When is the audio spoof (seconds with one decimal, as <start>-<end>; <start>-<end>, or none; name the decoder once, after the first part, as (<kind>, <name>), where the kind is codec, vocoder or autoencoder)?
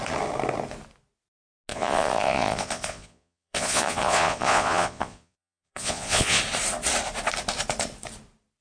1.7-6.4 (vocoder, Vocos)